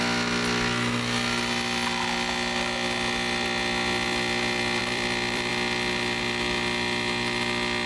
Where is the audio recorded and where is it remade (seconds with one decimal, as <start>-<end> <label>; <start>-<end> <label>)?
0.0-4.8 recorded; 4.8-5.5 remade; 5.5-7.9 recorded